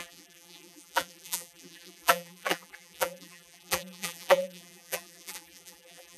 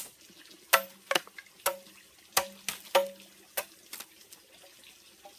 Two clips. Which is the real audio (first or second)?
second